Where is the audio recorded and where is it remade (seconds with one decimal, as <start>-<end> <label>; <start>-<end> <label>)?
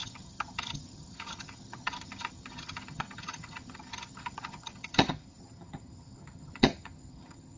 0.0-7.6 remade